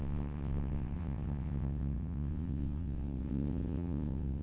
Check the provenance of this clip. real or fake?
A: fake